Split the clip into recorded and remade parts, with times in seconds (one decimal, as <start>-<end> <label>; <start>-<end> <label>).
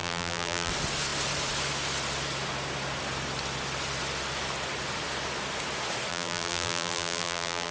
0.0-0.7 remade; 0.7-6.1 recorded; 6.1-7.7 remade